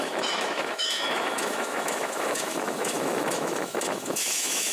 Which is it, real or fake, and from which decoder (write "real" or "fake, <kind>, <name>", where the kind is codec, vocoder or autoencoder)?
fake, autoencoder, DAC-VAE